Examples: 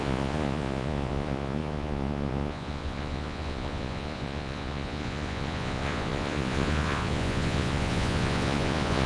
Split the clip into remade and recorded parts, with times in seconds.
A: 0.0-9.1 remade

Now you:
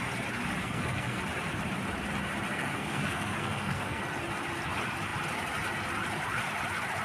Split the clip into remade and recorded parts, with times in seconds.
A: 0.0-0.6 recorded; 0.6-1.2 remade; 1.2-2.5 recorded; 2.5-4.0 remade; 4.0-7.0 recorded

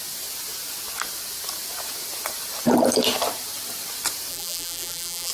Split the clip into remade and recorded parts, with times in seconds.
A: 0.0-4.3 recorded; 4.3-5.3 remade